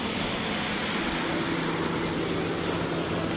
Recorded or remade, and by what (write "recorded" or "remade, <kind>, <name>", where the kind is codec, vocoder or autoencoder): recorded